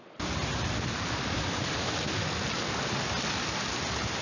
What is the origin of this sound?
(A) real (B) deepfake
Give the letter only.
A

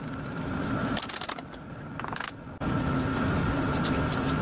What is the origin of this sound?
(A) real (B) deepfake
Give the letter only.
A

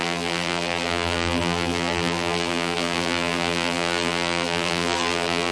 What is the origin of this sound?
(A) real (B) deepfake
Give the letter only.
B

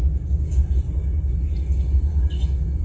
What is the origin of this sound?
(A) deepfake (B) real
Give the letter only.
B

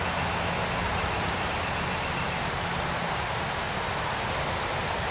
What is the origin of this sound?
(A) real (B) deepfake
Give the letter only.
A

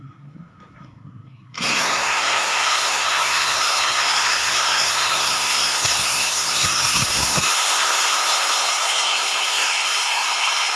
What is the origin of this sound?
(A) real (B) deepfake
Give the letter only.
B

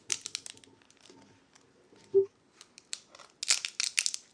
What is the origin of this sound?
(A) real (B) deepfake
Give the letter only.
A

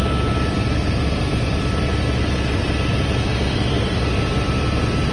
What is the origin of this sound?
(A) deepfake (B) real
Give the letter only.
B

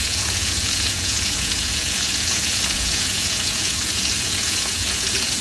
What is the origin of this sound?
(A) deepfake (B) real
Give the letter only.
A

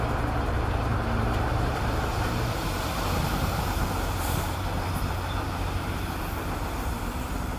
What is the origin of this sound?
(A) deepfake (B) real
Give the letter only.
A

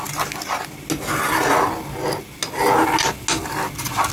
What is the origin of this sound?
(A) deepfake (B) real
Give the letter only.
B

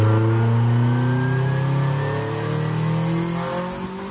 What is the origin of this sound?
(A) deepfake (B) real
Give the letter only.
B